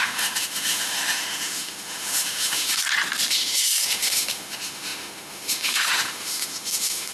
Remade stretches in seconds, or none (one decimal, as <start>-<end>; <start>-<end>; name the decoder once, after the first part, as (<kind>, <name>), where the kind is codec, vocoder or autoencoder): 0.0-2.8 (autoencoder, DAC-VAE); 3.3-7.1